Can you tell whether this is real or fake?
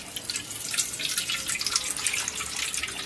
real